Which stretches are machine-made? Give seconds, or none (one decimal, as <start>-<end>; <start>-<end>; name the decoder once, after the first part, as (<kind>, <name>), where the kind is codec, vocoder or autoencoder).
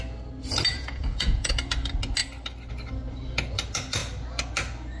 0.7-1.5 (vocoder, Vocos)